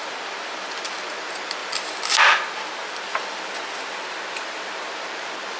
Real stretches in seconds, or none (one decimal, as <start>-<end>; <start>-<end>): 0.0-1.1; 1.6-5.0